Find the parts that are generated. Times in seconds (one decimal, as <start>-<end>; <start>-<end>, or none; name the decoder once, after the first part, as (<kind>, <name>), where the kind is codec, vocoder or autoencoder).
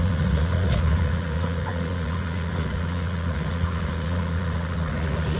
0.0-5.4 (vocoder, Vocos)